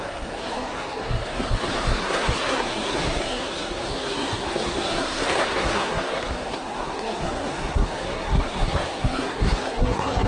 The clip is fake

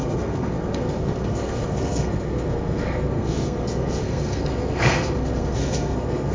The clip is fake